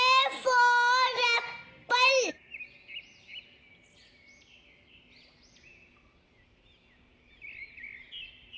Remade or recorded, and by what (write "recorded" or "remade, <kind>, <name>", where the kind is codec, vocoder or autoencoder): recorded